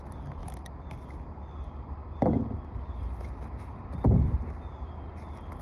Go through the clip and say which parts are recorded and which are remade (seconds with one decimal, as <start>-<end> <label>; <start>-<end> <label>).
0.0-5.6 recorded